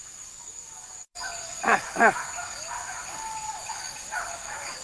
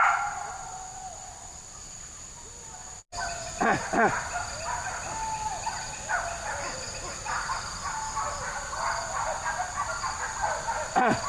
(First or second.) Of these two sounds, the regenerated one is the first